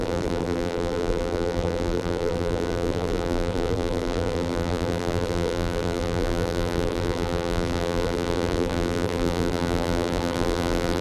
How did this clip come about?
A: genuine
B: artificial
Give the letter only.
B